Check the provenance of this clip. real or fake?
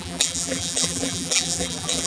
fake